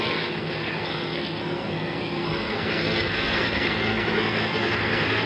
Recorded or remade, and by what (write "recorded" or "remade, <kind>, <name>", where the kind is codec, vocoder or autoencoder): remade, codec, SNAC